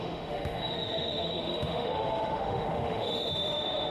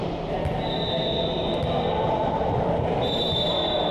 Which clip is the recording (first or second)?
second